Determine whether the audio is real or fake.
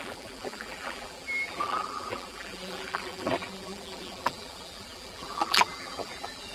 fake